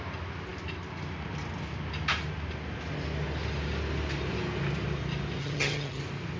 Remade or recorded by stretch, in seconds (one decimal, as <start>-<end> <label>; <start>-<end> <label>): 0.0-5.4 recorded; 5.4-6.0 remade; 6.0-6.4 recorded